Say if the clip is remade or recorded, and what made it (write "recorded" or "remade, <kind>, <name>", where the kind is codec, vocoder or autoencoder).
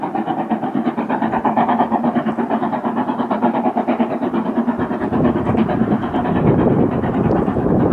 remade, vocoder, BigVGAN v2